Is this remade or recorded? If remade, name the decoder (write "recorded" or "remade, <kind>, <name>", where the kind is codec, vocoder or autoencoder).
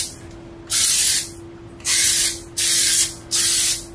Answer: recorded